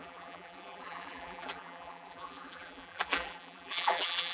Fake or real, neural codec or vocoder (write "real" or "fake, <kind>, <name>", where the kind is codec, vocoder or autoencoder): fake, vocoder, BigVGAN v2